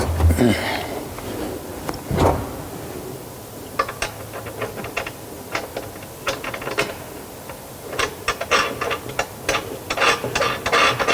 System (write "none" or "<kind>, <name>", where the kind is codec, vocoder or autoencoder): none